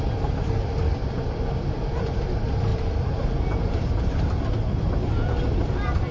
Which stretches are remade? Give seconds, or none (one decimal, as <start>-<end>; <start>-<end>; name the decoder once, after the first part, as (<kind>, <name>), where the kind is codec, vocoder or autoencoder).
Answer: 2.7-4.4 (vocoder, BigVGAN v2)

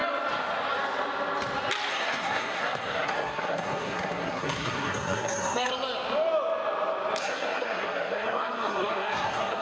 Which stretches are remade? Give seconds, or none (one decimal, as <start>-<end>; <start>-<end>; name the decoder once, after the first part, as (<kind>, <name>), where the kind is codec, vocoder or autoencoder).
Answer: 1.9-5.7 (codec, SNAC); 7.2-9.6

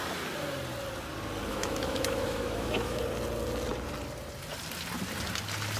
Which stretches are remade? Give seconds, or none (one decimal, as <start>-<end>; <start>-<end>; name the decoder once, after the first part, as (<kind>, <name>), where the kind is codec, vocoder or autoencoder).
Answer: 1.5-3.0 (autoencoder, DAC-VAE)

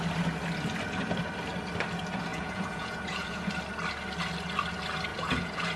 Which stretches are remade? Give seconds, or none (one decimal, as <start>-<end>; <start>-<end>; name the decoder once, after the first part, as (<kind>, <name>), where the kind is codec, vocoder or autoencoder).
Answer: 2.3-3.5 (vocoder, Vocos); 5.1-5.8

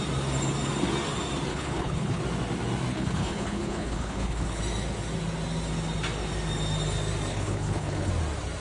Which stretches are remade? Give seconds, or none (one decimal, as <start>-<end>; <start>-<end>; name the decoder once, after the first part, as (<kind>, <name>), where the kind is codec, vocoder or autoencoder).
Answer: 1.5-2.2 (codec, HILCodec); 2.9-4.6; 7.3-8.1

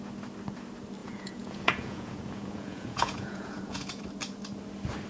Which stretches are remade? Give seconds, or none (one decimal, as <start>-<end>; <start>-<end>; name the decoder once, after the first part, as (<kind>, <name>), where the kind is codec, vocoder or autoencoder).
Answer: 1.0-4.0 (vocoder, Vocos)

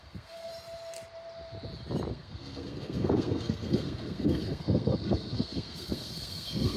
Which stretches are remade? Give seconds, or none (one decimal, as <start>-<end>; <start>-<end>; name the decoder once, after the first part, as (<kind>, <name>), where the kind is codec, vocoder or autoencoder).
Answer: 0.0-0.5 (codec, SNAC); 2.1-6.8